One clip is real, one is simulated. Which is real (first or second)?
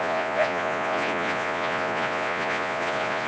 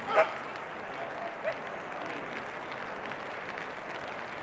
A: second